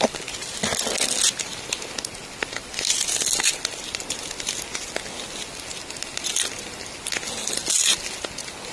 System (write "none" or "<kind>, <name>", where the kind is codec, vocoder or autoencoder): none